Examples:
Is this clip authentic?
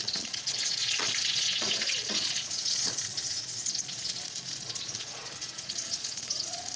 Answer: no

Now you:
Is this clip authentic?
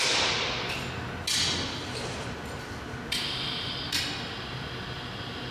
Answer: yes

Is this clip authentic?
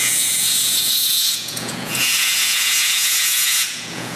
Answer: no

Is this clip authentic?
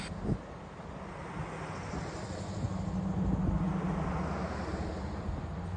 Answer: yes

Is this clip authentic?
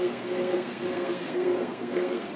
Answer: no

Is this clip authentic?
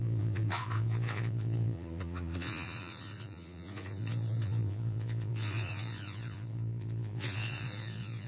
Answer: no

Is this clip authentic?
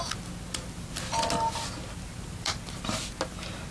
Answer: yes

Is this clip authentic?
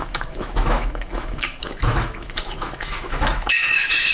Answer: no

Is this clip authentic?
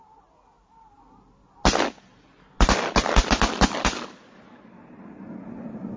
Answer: yes